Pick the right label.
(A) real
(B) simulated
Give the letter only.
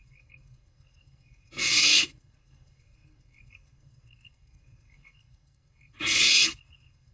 B